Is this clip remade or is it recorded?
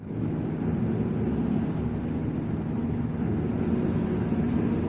recorded